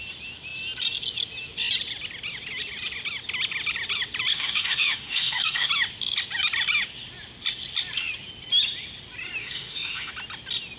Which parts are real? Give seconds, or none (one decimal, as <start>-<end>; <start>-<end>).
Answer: 0.0-4.3; 5.7-9.4; 10.1-10.8